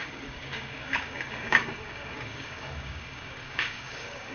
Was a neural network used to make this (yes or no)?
yes